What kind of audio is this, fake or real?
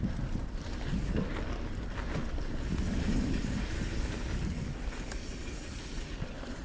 real